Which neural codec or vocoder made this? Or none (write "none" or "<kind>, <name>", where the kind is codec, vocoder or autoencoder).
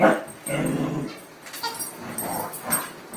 none